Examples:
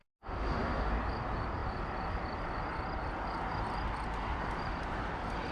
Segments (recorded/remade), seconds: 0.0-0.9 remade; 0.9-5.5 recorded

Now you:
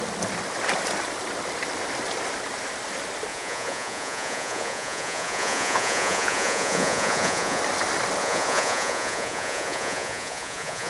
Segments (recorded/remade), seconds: 0.0-3.3 recorded; 3.3-7.6 remade; 7.6-8.2 recorded; 8.2-10.9 remade

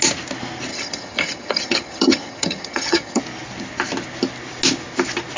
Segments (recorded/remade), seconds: 0.0-0.7 recorded; 0.7-3.2 remade; 3.2-5.4 recorded